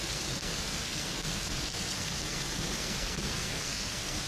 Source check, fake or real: fake